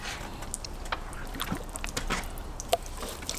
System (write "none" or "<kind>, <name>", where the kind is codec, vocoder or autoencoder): none